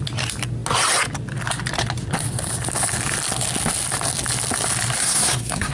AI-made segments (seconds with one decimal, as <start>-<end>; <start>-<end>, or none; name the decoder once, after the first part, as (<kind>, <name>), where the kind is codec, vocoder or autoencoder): 5.0-5.7 (codec, SNAC)